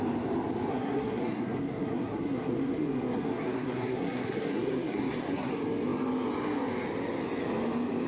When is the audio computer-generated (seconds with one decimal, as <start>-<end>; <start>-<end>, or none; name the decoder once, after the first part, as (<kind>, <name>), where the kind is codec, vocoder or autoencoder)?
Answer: 0.7-5.5 (codec, SNAC)